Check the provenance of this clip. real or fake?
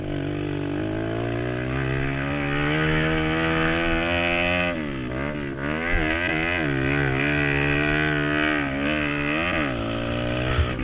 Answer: real